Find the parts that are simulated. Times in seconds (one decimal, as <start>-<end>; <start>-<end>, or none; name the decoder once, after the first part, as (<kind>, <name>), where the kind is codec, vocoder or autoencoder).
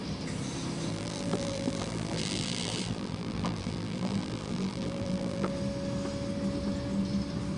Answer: 0.9-5.5 (vocoder, BigVGAN v2)